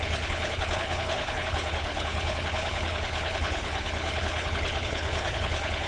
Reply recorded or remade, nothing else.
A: remade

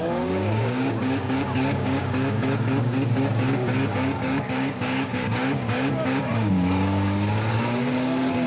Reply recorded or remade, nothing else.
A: remade